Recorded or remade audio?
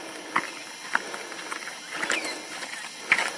recorded